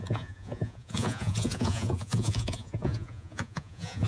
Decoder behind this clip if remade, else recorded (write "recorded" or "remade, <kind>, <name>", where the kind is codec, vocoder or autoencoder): remade, vocoder, Vocos